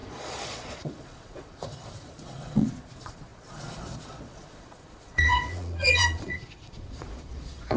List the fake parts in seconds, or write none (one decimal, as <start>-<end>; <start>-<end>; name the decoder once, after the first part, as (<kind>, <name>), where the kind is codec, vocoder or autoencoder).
0.0-7.8 (vocoder, Vocos)